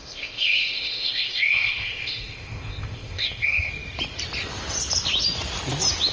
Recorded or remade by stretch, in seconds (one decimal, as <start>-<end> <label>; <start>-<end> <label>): 0.0-3.7 remade; 3.7-6.1 recorded